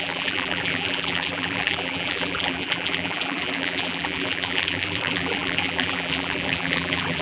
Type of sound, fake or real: fake